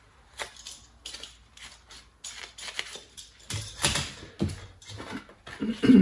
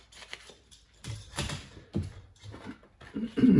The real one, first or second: first